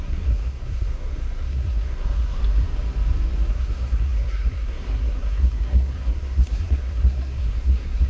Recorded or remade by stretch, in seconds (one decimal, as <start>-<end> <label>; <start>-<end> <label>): 0.0-2.4 remade; 2.4-3.5 recorded; 3.5-8.1 remade